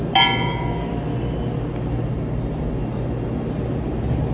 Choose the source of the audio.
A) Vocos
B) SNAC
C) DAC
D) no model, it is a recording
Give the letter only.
D